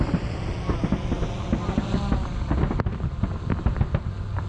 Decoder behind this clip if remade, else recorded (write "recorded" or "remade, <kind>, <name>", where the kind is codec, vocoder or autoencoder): recorded